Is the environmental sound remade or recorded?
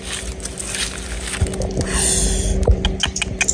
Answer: recorded